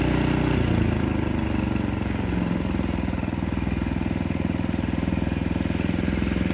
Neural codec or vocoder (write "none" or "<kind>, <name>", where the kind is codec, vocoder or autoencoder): none